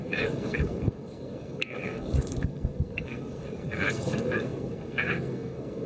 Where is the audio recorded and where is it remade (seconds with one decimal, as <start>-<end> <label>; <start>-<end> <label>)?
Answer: 0.0-5.9 remade